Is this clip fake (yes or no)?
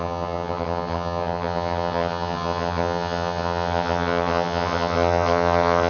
yes